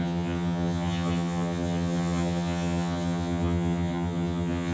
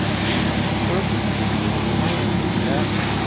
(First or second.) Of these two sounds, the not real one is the first